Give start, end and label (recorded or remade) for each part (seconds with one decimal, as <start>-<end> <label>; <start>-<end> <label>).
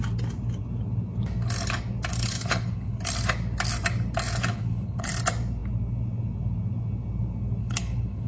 0.0-2.1 recorded; 2.1-3.0 remade; 3.0-4.5 recorded; 4.5-5.1 remade; 5.1-7.6 recorded; 7.6-8.3 remade